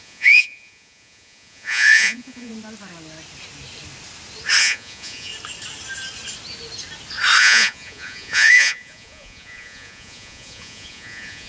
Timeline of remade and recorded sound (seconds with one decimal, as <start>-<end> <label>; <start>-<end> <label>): 0.0-2.5 remade; 2.5-4.6 recorded; 4.6-5.3 remade; 5.3-7.4 recorded; 7.4-11.5 remade